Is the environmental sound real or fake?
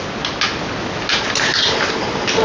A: real